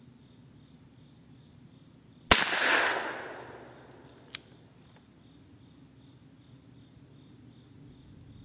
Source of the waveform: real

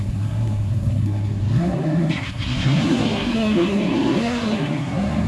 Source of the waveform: fake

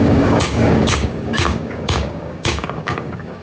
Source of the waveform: fake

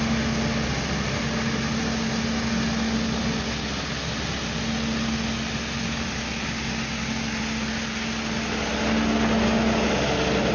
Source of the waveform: real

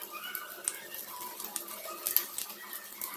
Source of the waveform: real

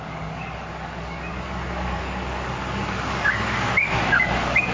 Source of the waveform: fake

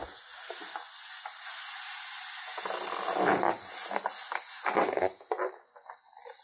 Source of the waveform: real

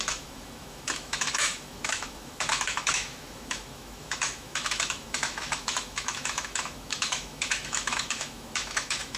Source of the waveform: fake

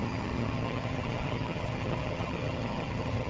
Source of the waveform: fake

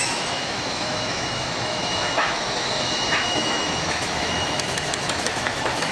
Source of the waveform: fake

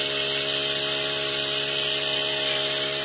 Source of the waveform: real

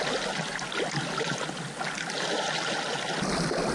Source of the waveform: real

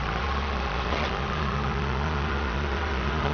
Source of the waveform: fake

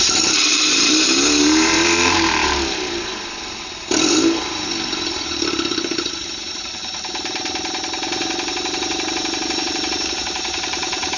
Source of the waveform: fake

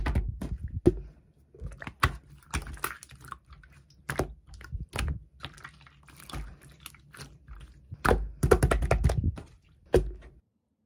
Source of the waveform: real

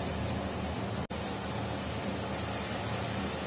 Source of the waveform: real